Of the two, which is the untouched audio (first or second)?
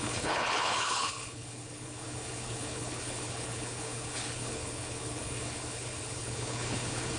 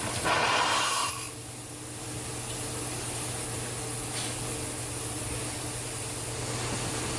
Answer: second